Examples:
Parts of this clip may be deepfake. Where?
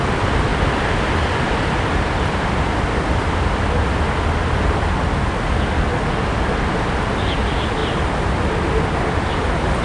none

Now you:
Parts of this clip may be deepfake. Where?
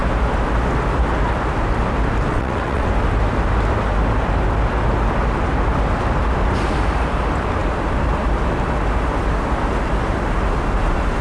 2.3-2.9 (vocoder, WaveNeXt)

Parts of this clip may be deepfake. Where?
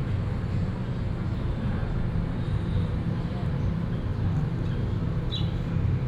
1.3-1.8 (vocoder, BigVGAN v2); 2.5-4.1; 5.0-6.1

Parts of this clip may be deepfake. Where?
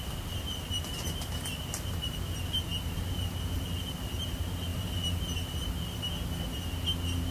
4.7-5.2 (vocoder, BigVGAN v2)